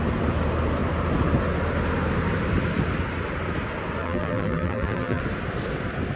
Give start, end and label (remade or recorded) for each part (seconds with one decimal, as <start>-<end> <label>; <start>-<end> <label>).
0.0-4.0 recorded; 4.0-5.2 remade; 5.2-6.2 recorded